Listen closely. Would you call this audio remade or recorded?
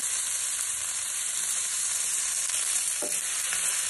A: remade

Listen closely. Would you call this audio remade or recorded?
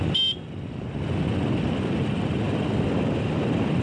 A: recorded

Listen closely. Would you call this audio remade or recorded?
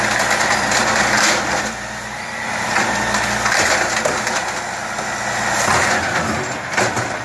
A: recorded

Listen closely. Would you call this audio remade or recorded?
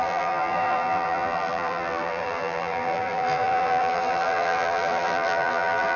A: remade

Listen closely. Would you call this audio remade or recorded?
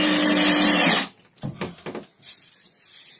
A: recorded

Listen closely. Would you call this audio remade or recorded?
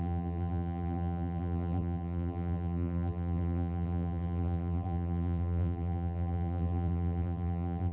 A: remade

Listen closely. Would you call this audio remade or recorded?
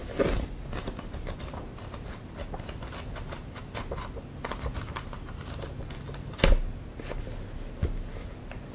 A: recorded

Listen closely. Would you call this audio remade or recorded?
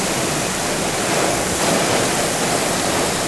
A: recorded